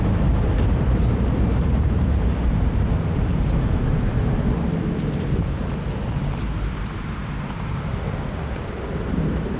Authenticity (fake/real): fake